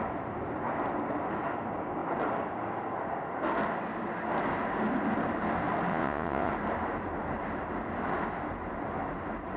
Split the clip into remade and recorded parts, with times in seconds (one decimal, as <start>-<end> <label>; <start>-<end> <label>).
0.0-5.9 recorded; 5.9-6.5 remade; 6.5-9.6 recorded